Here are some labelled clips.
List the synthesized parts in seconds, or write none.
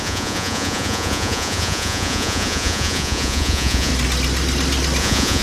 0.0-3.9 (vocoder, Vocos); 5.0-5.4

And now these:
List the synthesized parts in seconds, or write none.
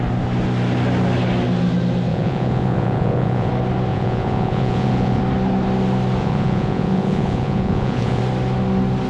2.1-3.5 (vocoder, Vocos); 3.9-5.2; 6.2-8.2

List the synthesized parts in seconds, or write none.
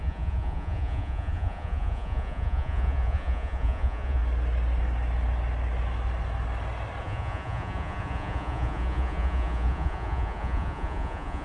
0.0-4.2 (vocoder, Vocos); 7.0-11.4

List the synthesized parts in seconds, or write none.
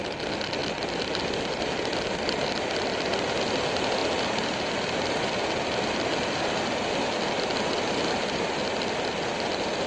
none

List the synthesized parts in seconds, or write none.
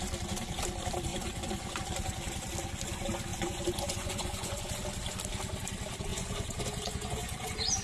1.1-1.8 (vocoder, Vocos); 3.3-4.8; 6.1-7.8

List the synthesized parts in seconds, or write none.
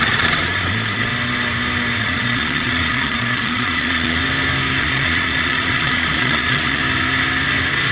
0.0-1.1 (vocoder, Vocos); 2.0-4.2; 4.8-6.8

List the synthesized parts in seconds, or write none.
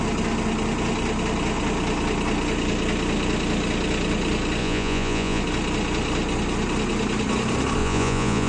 4.6-5.4 (vocoder, Vocos); 7.8-8.5